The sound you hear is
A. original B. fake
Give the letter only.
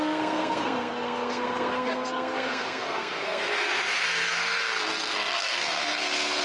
B